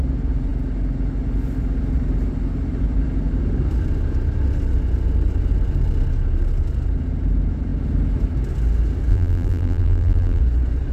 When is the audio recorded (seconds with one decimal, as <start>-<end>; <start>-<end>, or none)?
0.0-9.1; 10.4-10.9